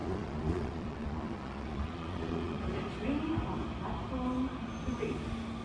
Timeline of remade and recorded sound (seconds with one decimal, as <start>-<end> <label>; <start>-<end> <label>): 0.0-2.6 remade; 2.6-5.6 recorded

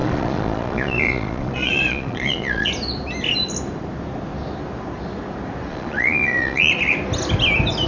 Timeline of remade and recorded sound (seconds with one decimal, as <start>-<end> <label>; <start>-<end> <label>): 0.0-2.7 remade; 2.7-5.7 recorded; 5.7-6.7 remade; 6.7-7.9 recorded

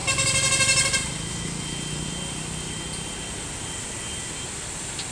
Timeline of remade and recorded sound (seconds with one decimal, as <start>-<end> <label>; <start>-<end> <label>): 0.0-5.1 recorded

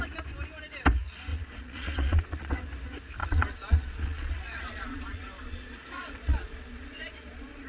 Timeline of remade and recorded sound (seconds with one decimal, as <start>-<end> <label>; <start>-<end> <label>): 0.0-1.3 recorded; 1.3-2.6 remade; 2.6-3.2 recorded; 3.2-7.7 remade

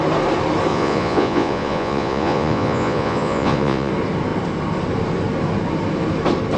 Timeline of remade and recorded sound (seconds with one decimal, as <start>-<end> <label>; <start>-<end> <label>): 0.0-0.7 recorded; 0.7-3.9 remade; 3.9-6.6 recorded

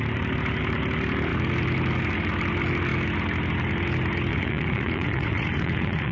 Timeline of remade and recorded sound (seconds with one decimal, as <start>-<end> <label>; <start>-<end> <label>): 0.0-4.3 recorded; 4.3-6.1 remade

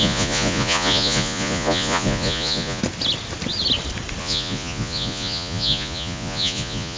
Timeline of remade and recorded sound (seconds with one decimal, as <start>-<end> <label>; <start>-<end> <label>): 0.0-2.8 remade; 2.8-4.2 recorded; 4.2-7.0 remade